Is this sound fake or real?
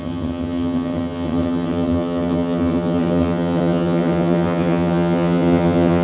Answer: fake